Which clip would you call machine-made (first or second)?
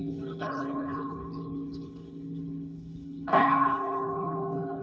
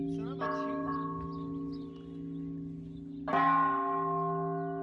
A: first